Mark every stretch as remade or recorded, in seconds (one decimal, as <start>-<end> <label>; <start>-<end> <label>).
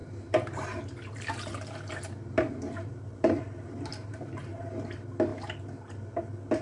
0.0-3.4 remade; 3.4-3.9 recorded; 3.9-4.6 remade; 4.6-6.6 recorded